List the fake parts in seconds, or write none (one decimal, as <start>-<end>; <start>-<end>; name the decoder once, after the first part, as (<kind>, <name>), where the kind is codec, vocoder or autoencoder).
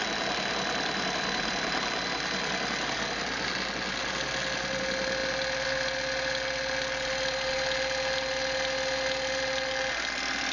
none